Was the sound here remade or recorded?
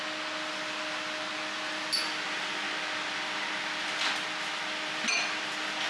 recorded